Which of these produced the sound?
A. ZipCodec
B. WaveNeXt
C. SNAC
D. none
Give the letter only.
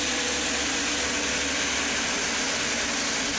D